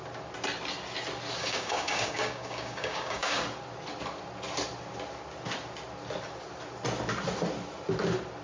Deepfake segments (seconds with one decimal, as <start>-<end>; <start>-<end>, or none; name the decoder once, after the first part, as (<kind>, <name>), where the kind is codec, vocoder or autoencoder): 1.4-3.4 (codec, DAC)